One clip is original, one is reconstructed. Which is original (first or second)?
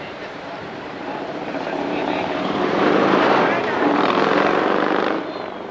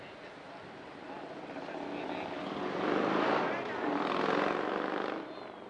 second